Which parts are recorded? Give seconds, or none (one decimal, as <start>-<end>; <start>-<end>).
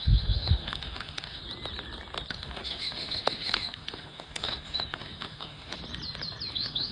1.4-2.3; 5.8-6.5